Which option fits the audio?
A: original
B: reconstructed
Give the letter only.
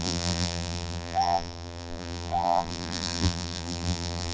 B